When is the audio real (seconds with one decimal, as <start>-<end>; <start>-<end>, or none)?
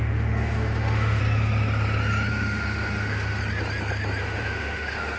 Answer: 1.2-2.3; 3.4-4.2